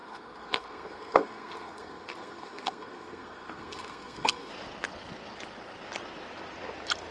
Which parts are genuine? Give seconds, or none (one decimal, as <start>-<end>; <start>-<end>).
4.5-7.1